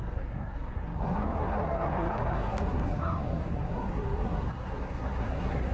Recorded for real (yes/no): no